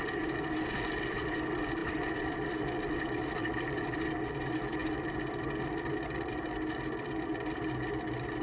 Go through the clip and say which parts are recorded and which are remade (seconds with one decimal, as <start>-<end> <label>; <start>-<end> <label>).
0.0-8.4 recorded